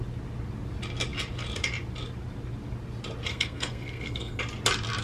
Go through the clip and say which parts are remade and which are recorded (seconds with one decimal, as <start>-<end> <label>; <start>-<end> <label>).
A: 0.0-3.3 recorded; 3.3-4.4 remade; 4.4-5.0 recorded